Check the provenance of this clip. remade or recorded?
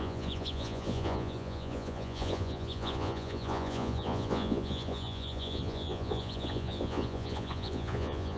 remade